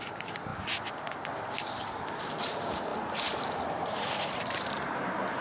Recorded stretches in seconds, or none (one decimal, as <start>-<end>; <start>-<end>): 0.5-2.4

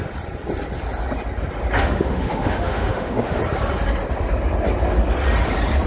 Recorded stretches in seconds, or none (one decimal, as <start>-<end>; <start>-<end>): 0.0-1.8; 3.4-5.9

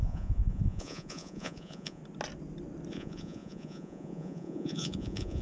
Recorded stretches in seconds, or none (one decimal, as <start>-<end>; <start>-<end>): 2.0-2.9

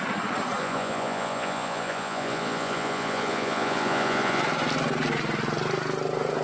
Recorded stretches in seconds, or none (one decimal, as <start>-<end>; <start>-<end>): 0.0-0.6; 4.4-6.4

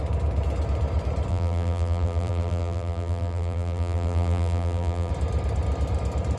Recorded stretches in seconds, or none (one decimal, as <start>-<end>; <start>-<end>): 0.0-1.3; 5.1-6.4

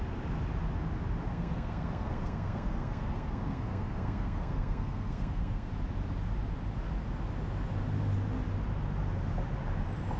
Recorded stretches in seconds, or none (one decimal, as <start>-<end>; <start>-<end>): 0.0-1.3; 5.7-10.2

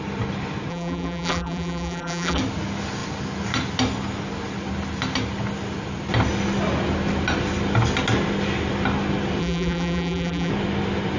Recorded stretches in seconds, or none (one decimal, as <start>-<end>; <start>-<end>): 0.0-0.7; 2.4-9.4; 10.5-11.2